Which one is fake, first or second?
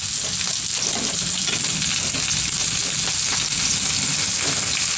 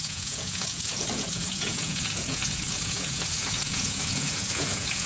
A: second